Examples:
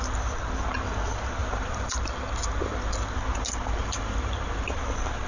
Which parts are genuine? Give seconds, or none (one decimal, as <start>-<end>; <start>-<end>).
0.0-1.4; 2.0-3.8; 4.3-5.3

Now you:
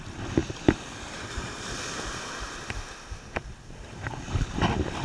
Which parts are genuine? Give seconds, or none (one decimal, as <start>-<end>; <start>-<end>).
0.0-5.0

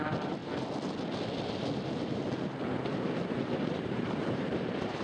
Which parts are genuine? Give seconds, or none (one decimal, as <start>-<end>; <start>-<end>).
0.4-3.4

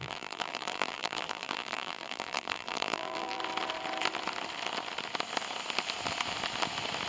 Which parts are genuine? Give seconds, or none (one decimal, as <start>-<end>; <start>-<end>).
3.4-7.1

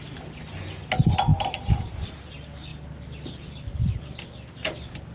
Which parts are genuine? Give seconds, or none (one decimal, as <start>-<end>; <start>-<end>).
0.0-2.7; 3.8-5.1